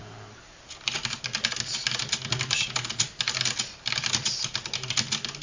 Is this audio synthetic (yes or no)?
no